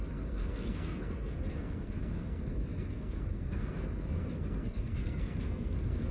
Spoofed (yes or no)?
yes